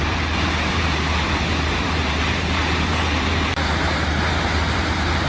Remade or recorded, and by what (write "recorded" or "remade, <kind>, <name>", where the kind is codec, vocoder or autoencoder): remade, vocoder, BigVGAN v2